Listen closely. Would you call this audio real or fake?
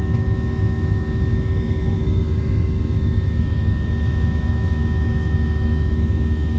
fake